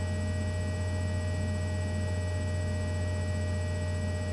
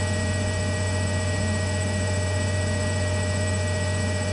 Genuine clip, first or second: first